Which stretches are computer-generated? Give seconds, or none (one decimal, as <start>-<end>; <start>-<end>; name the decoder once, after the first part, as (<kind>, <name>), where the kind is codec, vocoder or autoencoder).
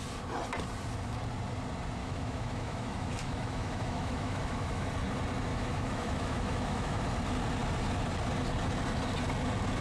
2.0-4.9 (autoencoder, DAC-VAE); 5.5-7.0